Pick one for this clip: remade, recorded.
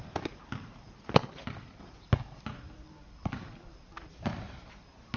recorded